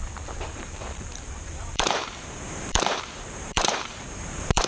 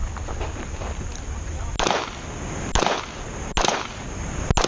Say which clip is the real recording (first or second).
second